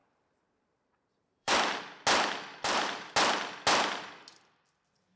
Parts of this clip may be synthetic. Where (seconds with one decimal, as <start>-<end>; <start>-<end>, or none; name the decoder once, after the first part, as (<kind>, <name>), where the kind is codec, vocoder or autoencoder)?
0.0-1.5 (vocoder, BigVGAN v2); 2.5-3.1